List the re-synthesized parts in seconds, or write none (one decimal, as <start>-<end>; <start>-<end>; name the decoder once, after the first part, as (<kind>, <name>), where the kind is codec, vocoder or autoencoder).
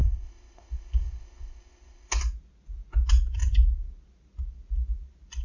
0.0-2.1 (codec, ZipCodec)